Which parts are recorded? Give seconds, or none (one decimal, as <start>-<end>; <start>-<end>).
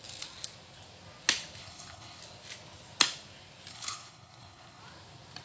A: 0.0-1.6; 2.2-3.7; 4.8-5.4